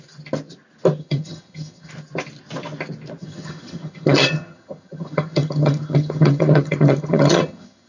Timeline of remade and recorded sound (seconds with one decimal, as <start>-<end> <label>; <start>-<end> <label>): 0.0-1.0 recorded; 1.0-1.9 remade; 1.9-3.2 recorded; 3.2-7.9 remade